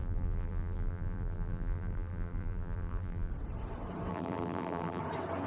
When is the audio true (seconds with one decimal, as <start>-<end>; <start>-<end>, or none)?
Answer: 3.3-4.1; 5.0-5.5